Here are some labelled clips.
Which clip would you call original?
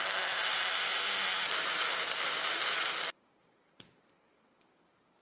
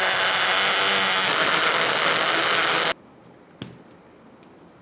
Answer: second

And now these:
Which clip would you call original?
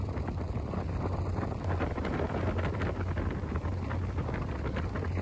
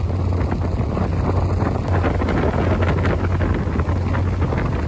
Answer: second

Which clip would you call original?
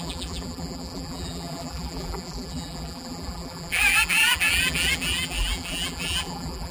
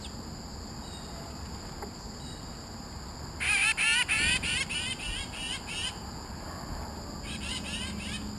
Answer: second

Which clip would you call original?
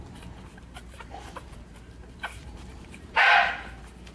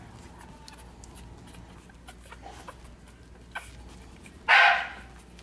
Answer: second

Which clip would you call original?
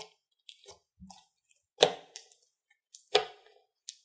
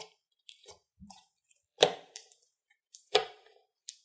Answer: first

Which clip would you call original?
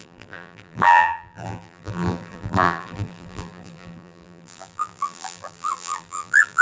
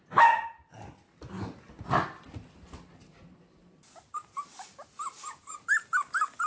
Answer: second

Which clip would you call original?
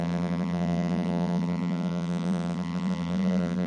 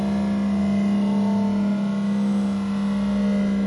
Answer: second